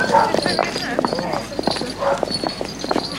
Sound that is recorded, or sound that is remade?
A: recorded